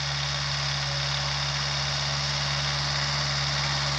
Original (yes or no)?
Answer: yes